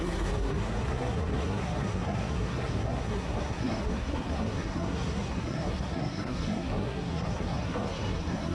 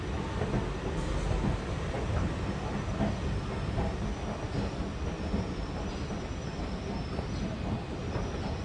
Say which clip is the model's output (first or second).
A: first